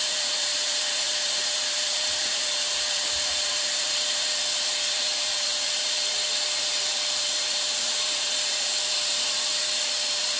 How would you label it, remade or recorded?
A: remade